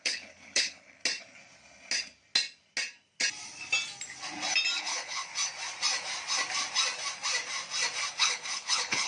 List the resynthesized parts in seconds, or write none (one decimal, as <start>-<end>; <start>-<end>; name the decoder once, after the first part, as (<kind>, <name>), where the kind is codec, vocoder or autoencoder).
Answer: 0.0-1.0 (codec, HILCodec); 4.8-5.3; 8.1-9.1